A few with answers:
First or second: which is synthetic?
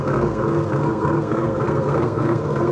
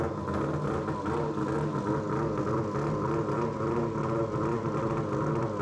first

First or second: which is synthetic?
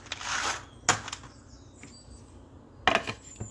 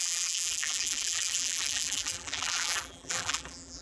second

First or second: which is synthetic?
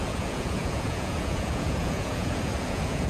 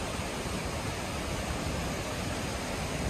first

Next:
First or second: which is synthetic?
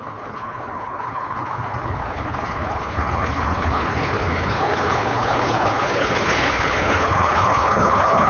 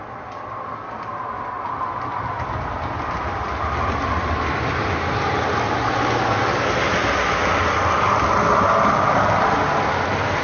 first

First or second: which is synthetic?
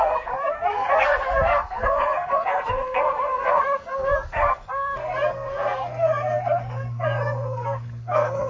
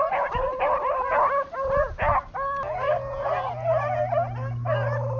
first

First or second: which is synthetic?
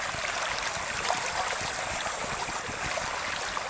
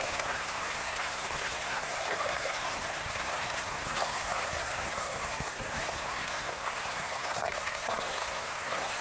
second